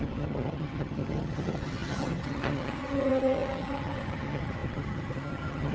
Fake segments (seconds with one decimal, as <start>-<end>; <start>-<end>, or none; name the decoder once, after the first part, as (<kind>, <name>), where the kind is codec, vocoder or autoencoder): 0.0-5.7 (vocoder, HiFi-GAN)